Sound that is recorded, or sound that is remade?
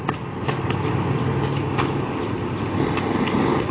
recorded